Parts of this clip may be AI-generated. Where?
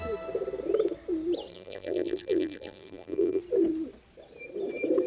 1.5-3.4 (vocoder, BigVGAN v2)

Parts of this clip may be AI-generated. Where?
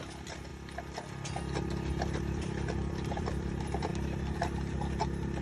0.0-0.5 (vocoder, BigVGAN v2); 2.2-3.9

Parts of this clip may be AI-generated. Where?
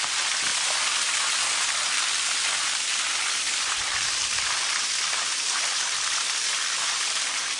0.0-7.6 (vocoder, BigVGAN v2)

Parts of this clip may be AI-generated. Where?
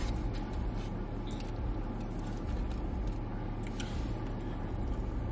none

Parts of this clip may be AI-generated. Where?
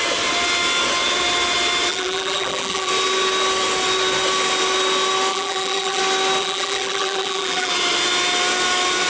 1.9-2.9 (vocoder, BigVGAN v2); 5.3-6.0; 6.4-7.7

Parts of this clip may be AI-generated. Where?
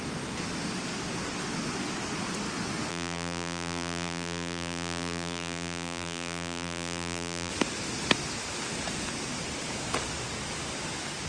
2.9-7.5 (vocoder, BigVGAN v2)